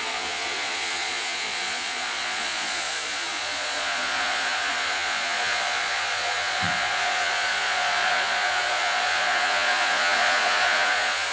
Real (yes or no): no